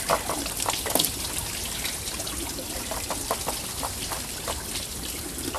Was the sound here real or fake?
real